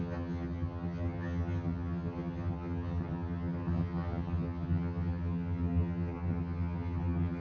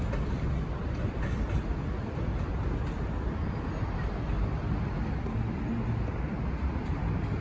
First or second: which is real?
second